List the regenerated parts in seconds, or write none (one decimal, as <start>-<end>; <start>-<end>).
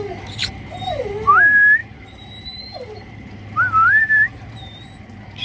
0.4-1.3; 1.8-5.0